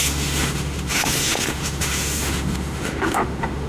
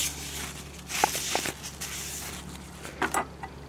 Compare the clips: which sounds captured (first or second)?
second